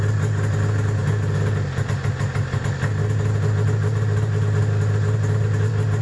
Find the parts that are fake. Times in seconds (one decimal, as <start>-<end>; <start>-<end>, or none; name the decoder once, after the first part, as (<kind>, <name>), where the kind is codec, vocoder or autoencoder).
none